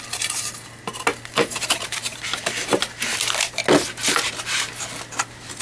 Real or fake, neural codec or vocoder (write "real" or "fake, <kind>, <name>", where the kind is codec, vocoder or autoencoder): real